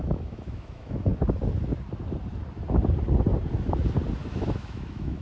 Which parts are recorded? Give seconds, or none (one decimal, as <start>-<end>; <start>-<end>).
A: 1.1-4.2